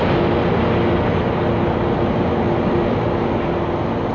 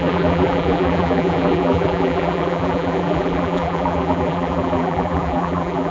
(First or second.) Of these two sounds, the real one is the first